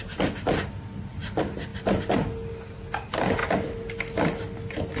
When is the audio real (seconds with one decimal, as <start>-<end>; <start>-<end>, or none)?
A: 0.0-5.0